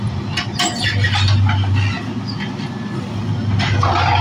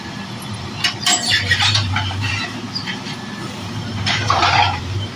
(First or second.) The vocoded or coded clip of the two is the second